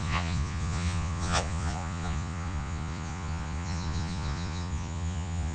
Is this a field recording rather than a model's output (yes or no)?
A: no